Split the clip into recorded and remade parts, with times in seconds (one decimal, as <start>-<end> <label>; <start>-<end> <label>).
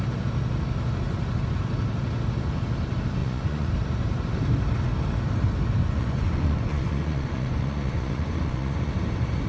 0.0-3.2 recorded; 3.2-3.7 remade; 3.7-5.8 recorded; 5.8-8.9 remade; 8.9-9.5 recorded